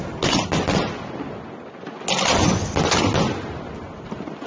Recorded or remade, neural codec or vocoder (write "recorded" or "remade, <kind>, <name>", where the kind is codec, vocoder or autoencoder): recorded